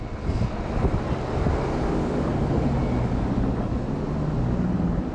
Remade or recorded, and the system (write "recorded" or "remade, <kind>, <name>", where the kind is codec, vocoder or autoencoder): recorded